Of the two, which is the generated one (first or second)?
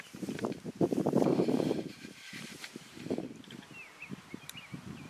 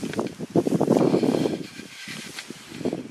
first